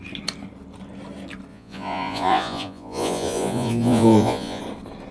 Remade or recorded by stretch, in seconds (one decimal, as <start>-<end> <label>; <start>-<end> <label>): 0.0-1.5 recorded; 1.5-4.6 remade; 4.6-5.1 recorded